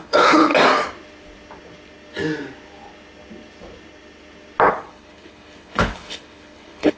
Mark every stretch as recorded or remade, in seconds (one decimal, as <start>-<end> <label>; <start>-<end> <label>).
0.0-0.5 remade; 0.5-4.7 recorded; 4.7-7.0 remade